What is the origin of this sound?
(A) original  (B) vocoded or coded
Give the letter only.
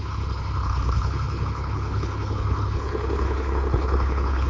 B